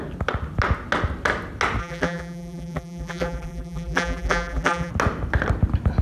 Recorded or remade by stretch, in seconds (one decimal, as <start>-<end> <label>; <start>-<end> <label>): 0.0-1.8 recorded; 1.8-4.9 remade; 4.9-6.0 recorded